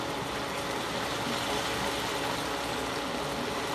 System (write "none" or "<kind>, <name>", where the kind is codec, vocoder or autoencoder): none